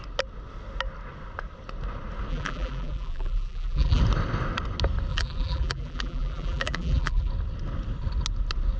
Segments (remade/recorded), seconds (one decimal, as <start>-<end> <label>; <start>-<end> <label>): 0.0-2.3 recorded; 2.3-4.0 remade; 4.0-5.1 recorded; 5.1-7.3 remade; 7.3-8.8 recorded